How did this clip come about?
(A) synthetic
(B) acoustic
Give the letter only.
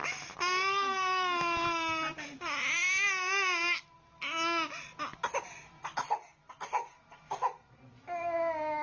B